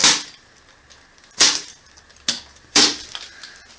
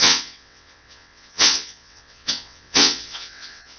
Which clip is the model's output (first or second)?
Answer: second